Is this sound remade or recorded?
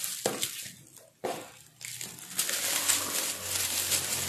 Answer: recorded